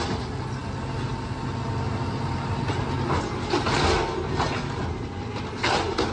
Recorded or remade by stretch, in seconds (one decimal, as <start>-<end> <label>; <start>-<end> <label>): 0.0-6.1 recorded